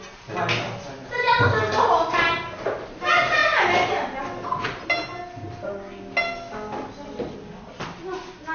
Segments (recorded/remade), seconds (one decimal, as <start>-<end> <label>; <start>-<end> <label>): 0.0-8.5 recorded